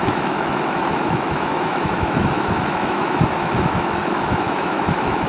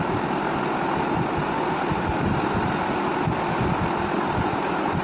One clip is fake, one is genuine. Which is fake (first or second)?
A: first